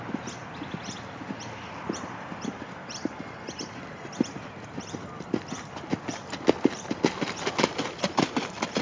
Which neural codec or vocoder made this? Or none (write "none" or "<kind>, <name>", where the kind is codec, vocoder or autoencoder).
none